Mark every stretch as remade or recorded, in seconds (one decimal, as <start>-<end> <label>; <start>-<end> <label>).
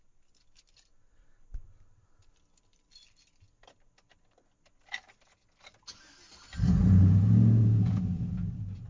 0.0-6.8 recorded; 6.8-8.0 remade; 8.0-8.9 recorded